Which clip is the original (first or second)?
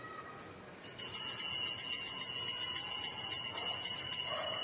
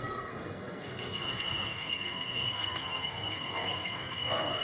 first